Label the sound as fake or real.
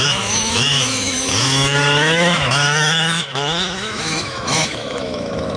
fake